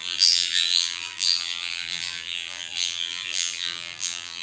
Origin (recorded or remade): remade